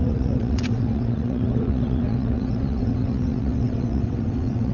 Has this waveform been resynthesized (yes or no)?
yes